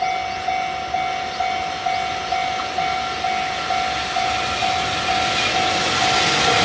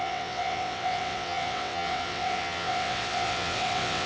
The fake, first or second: second